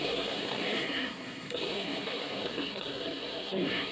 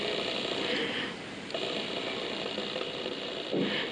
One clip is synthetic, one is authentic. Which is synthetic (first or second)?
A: first